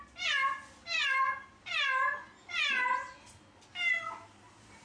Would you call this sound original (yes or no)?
yes